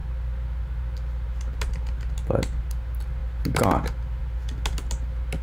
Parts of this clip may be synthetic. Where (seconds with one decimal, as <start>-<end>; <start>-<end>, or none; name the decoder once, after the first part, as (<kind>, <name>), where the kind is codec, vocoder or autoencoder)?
none